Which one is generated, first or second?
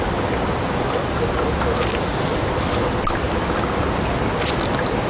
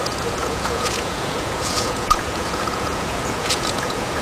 second